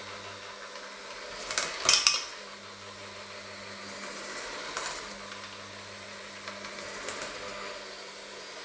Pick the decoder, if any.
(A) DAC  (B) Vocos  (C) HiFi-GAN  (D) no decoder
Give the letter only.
D